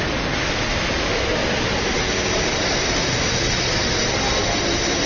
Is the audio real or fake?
real